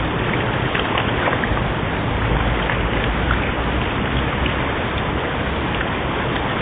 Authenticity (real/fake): real